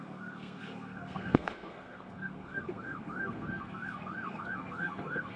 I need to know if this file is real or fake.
fake